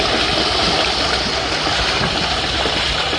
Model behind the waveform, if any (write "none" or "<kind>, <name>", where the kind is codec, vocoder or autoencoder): none